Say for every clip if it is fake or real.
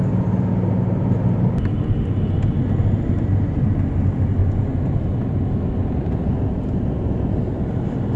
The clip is real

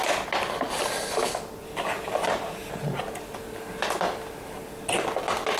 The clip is real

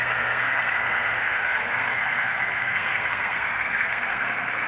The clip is fake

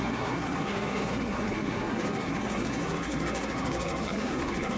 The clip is fake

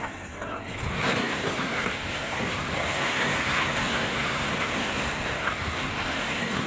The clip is fake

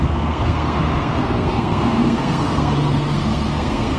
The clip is fake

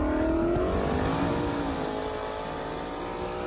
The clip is real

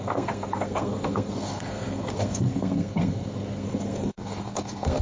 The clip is fake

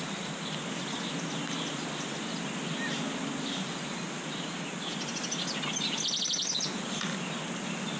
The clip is real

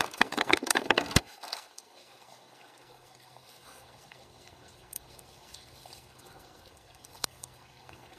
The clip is fake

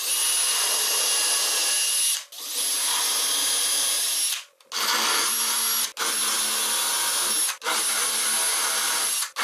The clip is real